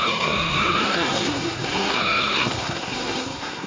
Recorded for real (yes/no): no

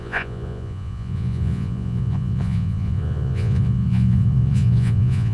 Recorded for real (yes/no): no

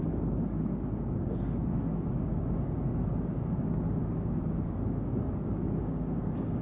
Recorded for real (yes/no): no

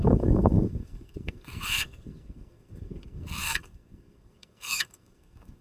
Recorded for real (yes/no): no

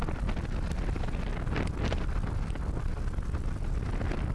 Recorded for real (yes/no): yes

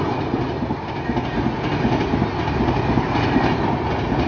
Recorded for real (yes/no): yes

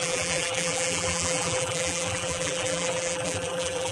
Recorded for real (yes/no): no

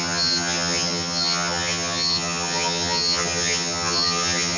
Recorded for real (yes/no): no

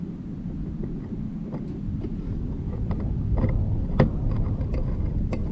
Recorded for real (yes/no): yes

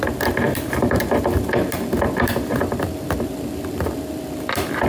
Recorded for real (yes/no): no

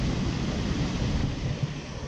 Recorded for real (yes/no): yes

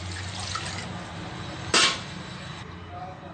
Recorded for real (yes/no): yes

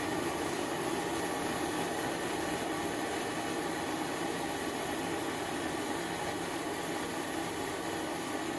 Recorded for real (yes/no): yes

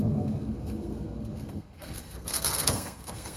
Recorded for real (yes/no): no